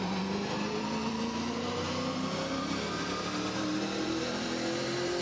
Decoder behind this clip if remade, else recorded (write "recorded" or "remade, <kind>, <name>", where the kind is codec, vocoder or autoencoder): remade, vocoder, BigVGAN v2